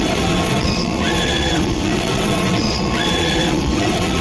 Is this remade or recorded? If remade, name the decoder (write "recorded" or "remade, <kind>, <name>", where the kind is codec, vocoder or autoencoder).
remade, vocoder, WaveNeXt